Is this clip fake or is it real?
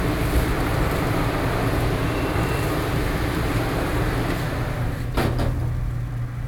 real